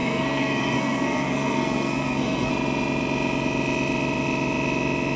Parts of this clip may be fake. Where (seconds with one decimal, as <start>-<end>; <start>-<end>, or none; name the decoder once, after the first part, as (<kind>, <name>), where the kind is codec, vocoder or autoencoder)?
0.0-2.5 (codec, SNAC)